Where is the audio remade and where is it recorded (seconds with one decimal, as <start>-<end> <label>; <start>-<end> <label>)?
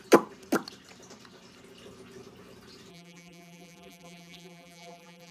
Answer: 0.0-2.9 recorded; 2.9-5.3 remade